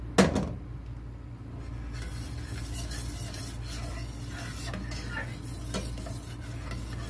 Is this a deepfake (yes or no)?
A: no